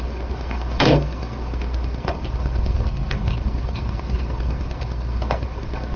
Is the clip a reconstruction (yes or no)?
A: yes